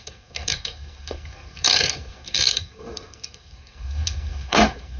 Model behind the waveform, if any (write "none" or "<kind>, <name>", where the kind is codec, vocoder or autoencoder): codec, SNAC